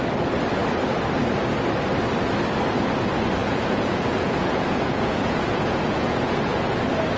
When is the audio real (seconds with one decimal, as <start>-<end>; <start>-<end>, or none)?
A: 0.0-3.4; 6.8-7.2